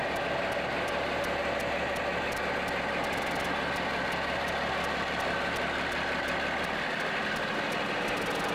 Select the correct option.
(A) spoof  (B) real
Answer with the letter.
B